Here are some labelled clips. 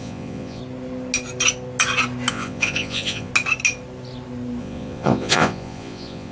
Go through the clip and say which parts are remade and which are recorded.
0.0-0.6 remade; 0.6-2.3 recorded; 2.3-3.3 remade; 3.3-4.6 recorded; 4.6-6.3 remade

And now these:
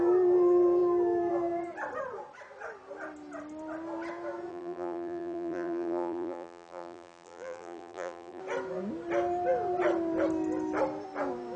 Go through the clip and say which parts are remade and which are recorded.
0.0-4.5 recorded; 4.5-8.4 remade; 8.4-11.6 recorded

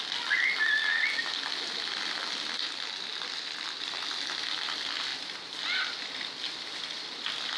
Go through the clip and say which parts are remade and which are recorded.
0.0-7.6 recorded

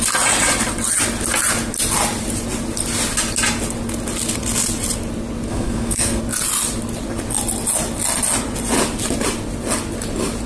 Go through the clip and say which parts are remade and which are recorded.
0.0-5.5 recorded; 5.5-6.2 remade; 6.2-10.5 recorded